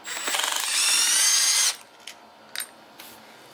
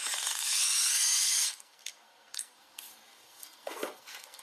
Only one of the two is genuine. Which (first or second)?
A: first